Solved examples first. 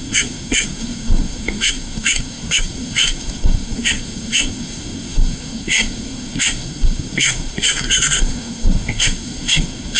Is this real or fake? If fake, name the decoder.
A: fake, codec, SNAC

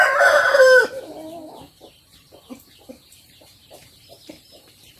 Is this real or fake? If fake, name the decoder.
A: fake, vocoder, BigVGAN v2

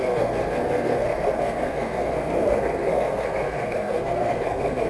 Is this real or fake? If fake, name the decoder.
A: fake, codec, SNAC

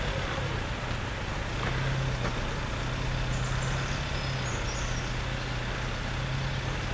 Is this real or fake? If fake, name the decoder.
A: real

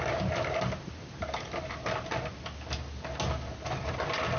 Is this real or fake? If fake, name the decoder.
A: real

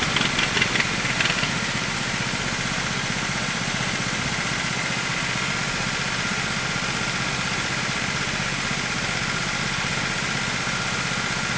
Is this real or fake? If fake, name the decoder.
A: real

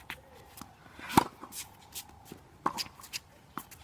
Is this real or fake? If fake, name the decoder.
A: real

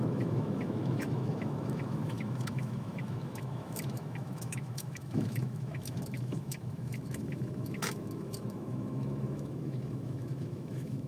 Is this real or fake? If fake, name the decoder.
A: fake, autoencoder, DAC-VAE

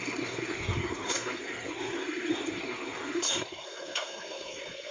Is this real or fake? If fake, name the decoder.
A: fake, codec, SNAC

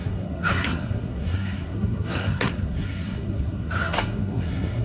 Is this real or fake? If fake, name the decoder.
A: fake, codec, SNAC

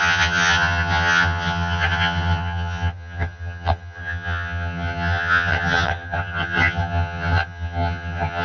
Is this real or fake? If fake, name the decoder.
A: fake, vocoder, HiFi-GAN